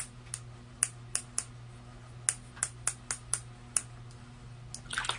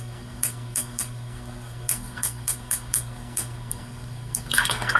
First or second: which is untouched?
first